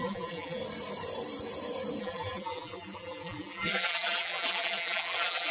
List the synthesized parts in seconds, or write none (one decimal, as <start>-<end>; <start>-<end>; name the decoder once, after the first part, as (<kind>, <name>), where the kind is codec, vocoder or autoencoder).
0.0-0.6 (vocoder, BigVGAN v2); 2.0-5.5